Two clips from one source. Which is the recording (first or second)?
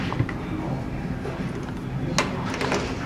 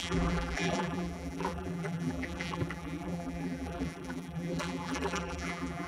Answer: first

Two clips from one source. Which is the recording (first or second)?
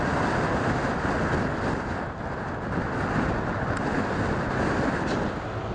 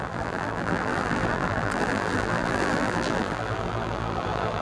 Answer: first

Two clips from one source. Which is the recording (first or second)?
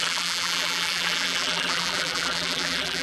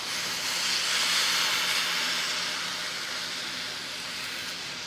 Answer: second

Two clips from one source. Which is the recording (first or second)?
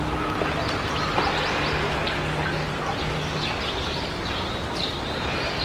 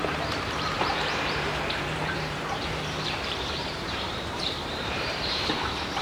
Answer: first